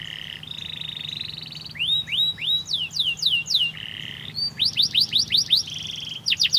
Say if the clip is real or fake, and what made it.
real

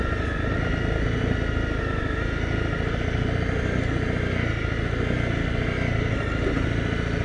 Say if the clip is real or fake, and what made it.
real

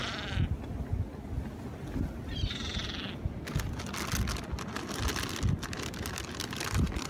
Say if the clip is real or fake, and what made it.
real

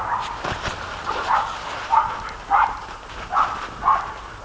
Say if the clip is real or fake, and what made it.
real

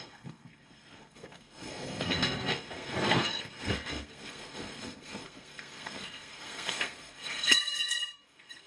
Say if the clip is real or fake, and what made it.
fake, codec, SNAC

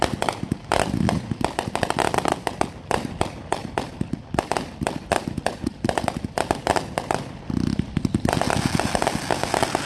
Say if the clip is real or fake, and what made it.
real